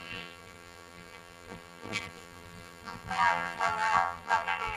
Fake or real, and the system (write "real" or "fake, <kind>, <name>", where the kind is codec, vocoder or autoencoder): fake, vocoder, BigVGAN v2